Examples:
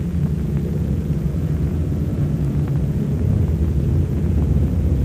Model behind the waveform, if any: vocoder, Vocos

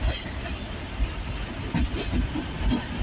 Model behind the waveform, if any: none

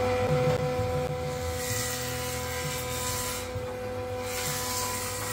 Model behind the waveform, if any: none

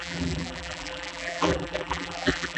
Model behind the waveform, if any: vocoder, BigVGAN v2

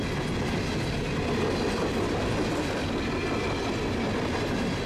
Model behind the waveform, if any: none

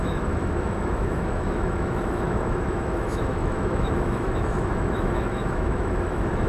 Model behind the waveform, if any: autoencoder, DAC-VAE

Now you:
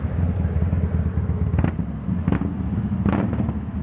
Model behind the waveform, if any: none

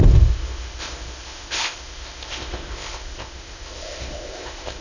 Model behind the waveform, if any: codec, ZipCodec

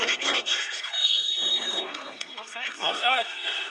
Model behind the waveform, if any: codec, SNAC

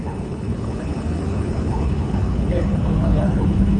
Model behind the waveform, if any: codec, HILCodec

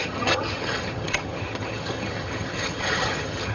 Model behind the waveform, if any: vocoder, HiFi-GAN